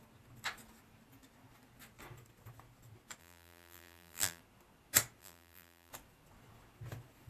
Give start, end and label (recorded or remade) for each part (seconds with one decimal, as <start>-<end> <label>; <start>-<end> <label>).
0.0-3.2 recorded; 3.2-4.4 remade; 4.4-5.2 recorded; 5.2-5.9 remade; 5.9-7.3 recorded